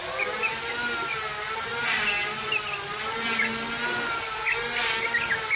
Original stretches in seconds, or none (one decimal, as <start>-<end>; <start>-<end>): 0.0-5.6